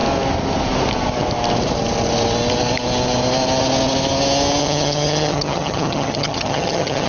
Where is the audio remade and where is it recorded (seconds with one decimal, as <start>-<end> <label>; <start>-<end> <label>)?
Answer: 0.0-4.6 recorded; 4.6-7.1 remade

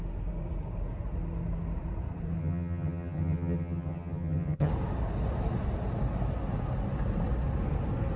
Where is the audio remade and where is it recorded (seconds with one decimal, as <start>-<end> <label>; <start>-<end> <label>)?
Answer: 0.0-2.4 recorded; 2.4-4.7 remade; 4.7-8.2 recorded

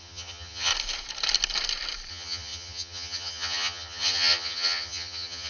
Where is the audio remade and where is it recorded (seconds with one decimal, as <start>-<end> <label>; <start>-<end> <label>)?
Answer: 0.0-0.7 remade; 0.7-2.1 recorded; 2.1-5.5 remade

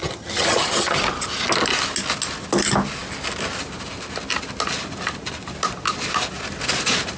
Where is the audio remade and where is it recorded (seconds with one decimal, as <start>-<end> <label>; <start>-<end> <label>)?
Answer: 0.0-1.0 remade; 1.0-7.2 recorded

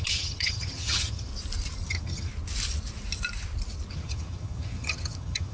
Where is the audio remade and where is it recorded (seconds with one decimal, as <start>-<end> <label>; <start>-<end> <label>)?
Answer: 0.0-1.3 remade; 1.3-1.9 recorded; 1.9-2.3 remade; 2.3-3.9 recorded; 3.9-5.5 remade

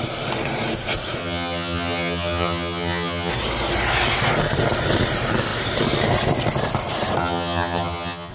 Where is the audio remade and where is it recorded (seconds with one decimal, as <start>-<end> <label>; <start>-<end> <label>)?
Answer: 0.0-1.2 recorded; 1.2-3.3 remade; 3.3-7.2 recorded; 7.2-8.3 remade

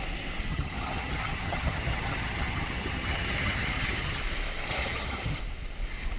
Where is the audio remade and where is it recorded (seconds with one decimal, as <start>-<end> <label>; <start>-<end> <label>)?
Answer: 0.0-0.5 recorded; 0.5-4.2 remade; 4.2-4.7 recorded; 4.7-5.4 remade; 5.4-6.2 recorded